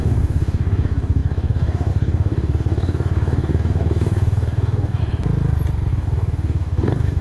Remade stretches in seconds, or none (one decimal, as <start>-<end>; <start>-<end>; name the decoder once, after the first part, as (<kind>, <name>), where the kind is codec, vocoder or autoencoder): 0.0-5.0 (codec, DAC); 5.9-7.2